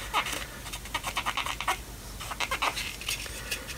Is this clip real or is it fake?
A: fake